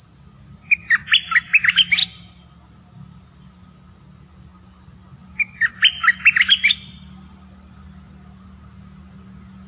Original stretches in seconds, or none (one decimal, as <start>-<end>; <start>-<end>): 0.0-9.7